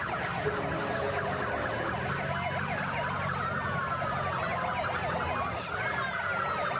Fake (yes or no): no